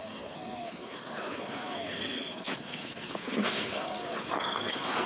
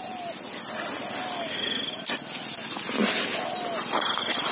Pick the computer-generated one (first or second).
first